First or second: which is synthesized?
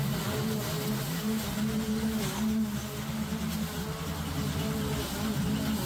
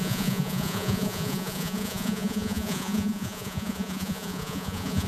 second